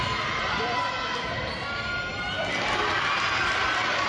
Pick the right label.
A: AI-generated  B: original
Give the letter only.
B